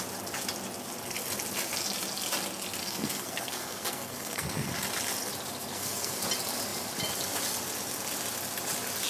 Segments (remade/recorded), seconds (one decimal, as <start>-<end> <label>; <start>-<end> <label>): 0.0-2.8 recorded; 2.8-4.7 remade; 4.7-5.7 recorded; 5.7-6.2 remade; 6.2-9.1 recorded